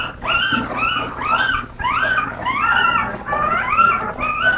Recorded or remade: recorded